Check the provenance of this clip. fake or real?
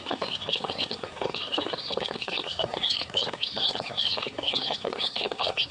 fake